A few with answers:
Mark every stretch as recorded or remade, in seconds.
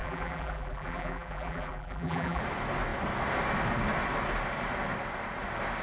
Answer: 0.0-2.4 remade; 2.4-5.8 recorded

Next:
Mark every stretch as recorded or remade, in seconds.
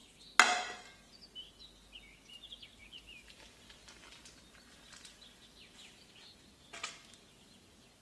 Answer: 0.0-2.8 recorded; 2.8-6.1 remade; 6.1-8.0 recorded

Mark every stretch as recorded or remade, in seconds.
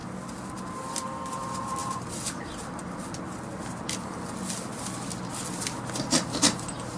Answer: 0.0-0.5 remade; 0.5-1.8 recorded; 1.8-4.7 remade; 4.7-7.0 recorded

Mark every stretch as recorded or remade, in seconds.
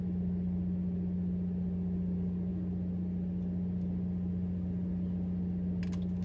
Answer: 0.0-6.2 recorded